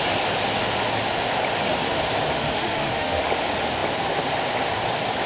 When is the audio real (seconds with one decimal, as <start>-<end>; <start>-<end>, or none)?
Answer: 0.0-2.4; 3.2-5.3